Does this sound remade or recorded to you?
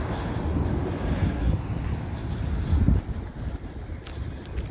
recorded